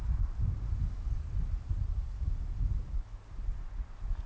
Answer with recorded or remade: recorded